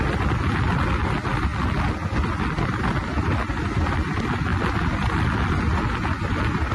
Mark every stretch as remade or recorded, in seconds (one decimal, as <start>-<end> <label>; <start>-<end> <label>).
0.0-6.7 recorded